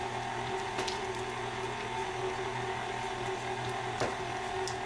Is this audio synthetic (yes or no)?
no